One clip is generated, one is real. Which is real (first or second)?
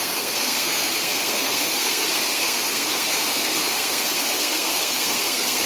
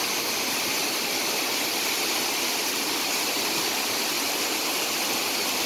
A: second